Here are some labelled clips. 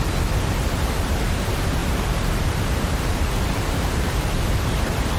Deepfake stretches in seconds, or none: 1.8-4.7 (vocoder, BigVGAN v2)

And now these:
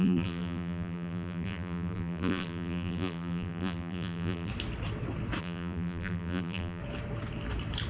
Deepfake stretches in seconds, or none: 0.0-4.5 (vocoder, BigVGAN v2); 5.4-6.8

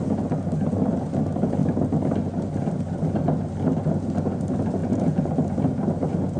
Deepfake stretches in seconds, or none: 4.8-5.3 (vocoder, Vocos)

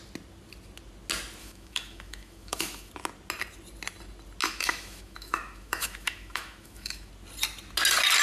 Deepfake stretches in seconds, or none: 1.4-2.9 (autoencoder, DAC-VAE); 4.4-7.1

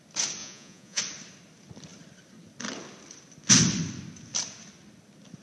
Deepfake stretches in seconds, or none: 0.4-1.0 (vocoder, Vocos)